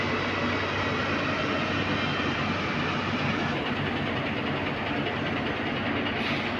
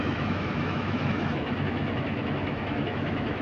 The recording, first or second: first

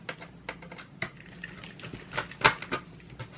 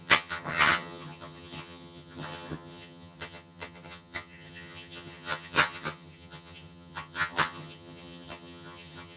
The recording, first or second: first